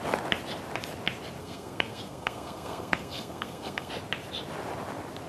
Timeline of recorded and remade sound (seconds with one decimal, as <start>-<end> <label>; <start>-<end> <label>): 0.0-1.4 recorded; 1.4-3.9 remade; 3.9-5.3 recorded